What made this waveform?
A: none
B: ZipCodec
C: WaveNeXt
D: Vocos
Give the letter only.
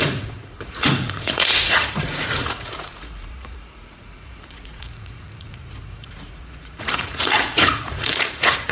D